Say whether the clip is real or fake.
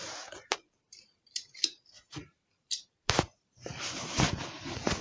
fake